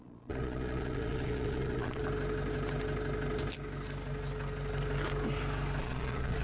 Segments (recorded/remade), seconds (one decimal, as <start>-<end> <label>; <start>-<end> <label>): 0.0-2.0 remade; 2.0-5.8 recorded; 5.8-6.4 remade